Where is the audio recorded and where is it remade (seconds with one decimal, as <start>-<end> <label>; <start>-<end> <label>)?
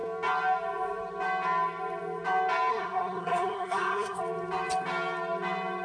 0.0-2.7 recorded; 2.7-4.2 remade; 4.2-5.8 recorded